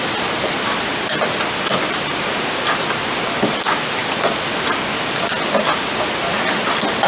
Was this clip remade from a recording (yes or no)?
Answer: no